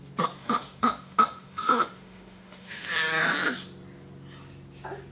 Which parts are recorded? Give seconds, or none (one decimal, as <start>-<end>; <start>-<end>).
0.0-0.4; 2.9-5.1